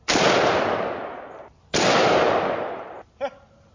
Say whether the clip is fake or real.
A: real